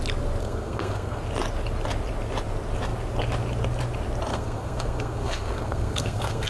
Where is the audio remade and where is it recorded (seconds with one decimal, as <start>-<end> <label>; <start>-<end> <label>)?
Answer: 0.0-0.4 recorded; 0.4-1.2 remade; 1.2-4.3 recorded; 4.3-6.5 remade